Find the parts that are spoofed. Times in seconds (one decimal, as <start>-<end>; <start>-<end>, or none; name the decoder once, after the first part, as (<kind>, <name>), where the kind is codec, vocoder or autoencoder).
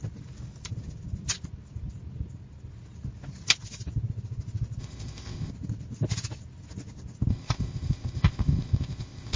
4.8-5.5 (codec, ZipCodec); 7.3-9.4